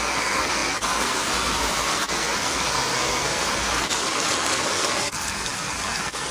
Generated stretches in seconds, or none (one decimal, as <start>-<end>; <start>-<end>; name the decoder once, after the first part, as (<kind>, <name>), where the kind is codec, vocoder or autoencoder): 0.0-6.3 (codec, SNAC)